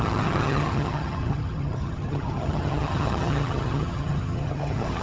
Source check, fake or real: fake